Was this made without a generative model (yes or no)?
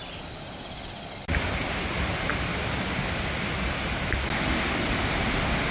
yes